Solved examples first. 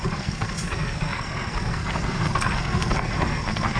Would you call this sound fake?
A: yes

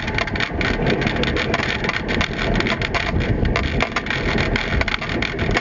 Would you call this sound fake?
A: no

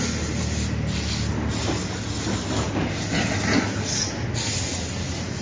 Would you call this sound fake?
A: no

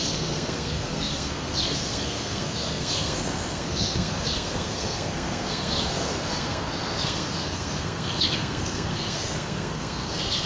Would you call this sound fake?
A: yes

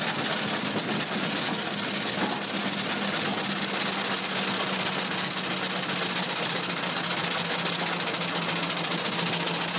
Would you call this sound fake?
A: no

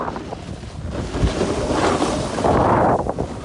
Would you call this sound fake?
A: no